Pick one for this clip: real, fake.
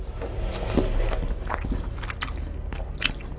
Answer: real